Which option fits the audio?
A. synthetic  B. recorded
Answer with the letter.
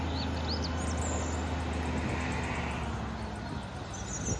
B